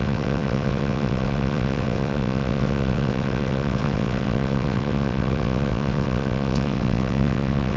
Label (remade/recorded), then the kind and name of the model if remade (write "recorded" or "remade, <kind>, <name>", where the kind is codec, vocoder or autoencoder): remade, vocoder, WaveNeXt